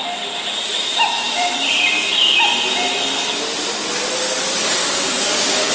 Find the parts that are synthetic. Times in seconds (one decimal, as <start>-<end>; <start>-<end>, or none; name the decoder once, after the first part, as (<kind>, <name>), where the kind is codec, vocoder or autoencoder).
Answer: 4.8-5.7 (codec, DAC)